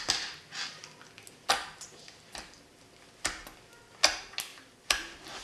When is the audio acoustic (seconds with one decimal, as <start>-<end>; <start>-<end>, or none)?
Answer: 0.0-4.5